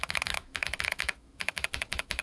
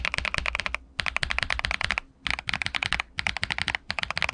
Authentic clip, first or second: second